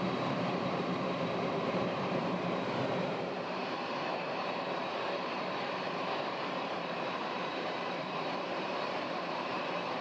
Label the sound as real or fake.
fake